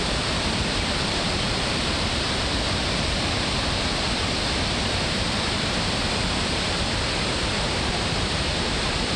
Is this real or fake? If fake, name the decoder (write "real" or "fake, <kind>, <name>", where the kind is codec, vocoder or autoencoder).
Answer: fake, vocoder, BigVGAN v2